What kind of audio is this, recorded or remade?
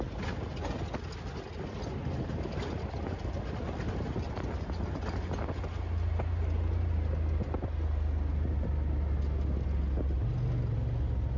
recorded